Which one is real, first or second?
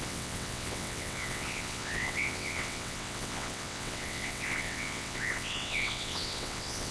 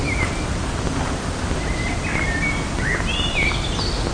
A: second